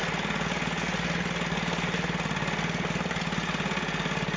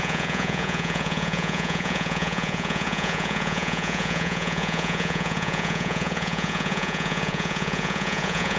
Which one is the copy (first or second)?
second